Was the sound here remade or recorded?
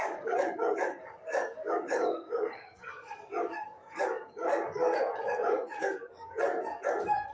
remade